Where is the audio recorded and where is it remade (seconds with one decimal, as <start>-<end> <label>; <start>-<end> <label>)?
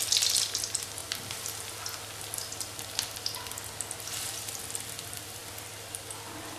0.0-6.6 recorded